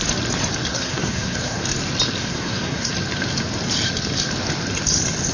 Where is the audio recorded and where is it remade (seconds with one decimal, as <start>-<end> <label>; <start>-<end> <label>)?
0.0-0.7 recorded; 0.7-1.6 remade; 1.6-2.2 recorded; 2.2-2.9 remade; 2.9-5.3 recorded

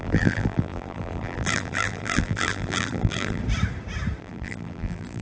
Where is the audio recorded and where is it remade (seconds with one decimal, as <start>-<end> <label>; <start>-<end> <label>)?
0.0-3.4 remade; 3.4-4.2 recorded; 4.2-5.2 remade

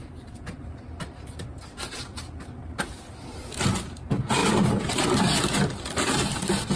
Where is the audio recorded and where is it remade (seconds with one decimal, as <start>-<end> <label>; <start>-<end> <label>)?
0.0-2.9 remade; 2.9-4.4 recorded; 4.4-5.0 remade; 5.0-6.8 recorded

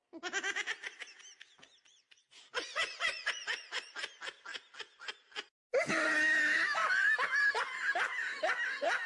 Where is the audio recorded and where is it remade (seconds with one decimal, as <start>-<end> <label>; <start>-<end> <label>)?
0.0-1.9 recorded; 1.9-3.9 remade; 3.9-9.1 recorded

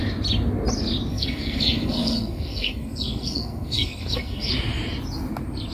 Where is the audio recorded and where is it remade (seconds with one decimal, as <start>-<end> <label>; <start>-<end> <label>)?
0.0-1.1 recorded; 1.1-4.5 remade; 4.5-5.7 recorded